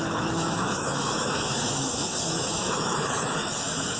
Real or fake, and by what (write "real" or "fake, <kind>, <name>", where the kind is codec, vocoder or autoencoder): fake, autoencoder, DAC-VAE